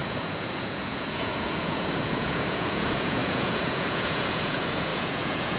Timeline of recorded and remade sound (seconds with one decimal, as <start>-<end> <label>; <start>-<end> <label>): 0.0-5.6 remade